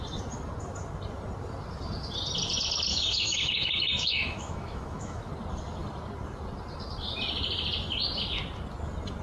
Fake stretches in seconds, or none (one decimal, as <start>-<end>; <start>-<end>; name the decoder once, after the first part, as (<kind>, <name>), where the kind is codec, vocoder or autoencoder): 2.9-5.3 (autoencoder, DAC-VAE)